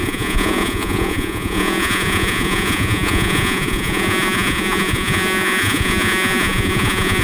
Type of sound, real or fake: fake